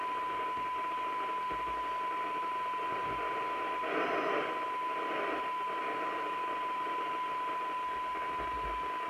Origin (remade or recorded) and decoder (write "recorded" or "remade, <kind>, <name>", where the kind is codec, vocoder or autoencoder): recorded